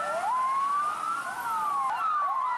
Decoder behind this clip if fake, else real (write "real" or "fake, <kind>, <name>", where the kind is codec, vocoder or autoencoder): real